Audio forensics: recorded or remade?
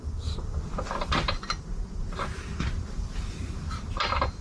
remade